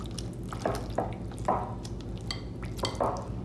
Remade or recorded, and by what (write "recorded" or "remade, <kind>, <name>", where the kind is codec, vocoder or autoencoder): recorded